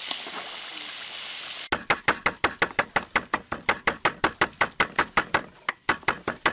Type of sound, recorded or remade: recorded